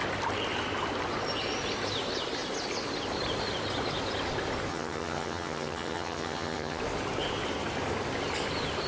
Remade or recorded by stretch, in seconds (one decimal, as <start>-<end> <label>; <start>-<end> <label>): 0.0-4.7 recorded; 4.7-6.8 remade; 6.8-8.9 recorded